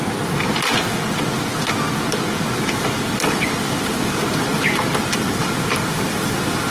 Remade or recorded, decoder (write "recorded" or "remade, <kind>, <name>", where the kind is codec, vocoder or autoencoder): recorded